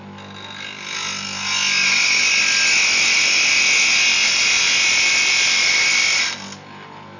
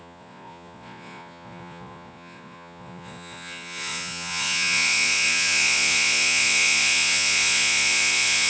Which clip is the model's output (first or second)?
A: second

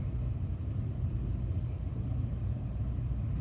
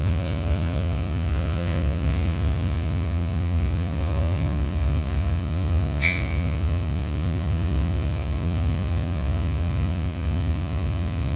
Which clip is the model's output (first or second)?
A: second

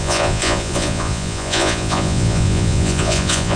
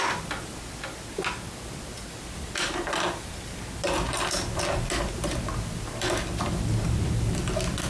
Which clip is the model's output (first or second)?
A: first